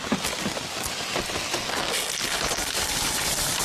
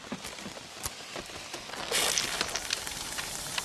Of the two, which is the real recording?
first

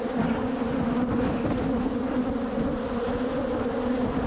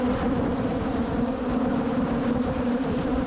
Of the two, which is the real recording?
first